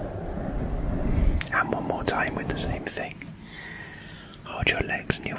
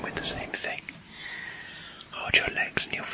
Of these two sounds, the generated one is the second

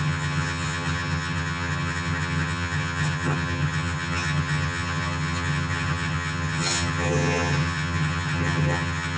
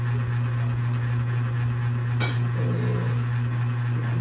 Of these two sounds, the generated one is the first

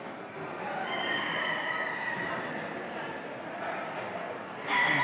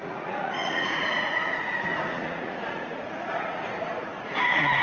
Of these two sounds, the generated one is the second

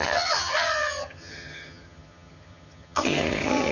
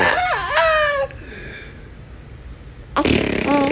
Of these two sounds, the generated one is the first